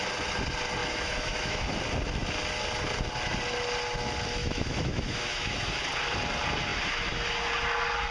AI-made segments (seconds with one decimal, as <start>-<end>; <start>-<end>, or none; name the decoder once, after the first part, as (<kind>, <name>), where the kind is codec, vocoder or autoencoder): 0.8-1.7 (autoencoder, DAC-VAE); 4.4-5.8